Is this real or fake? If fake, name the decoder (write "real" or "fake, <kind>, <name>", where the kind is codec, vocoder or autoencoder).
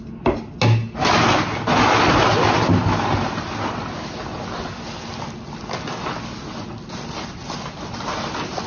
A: real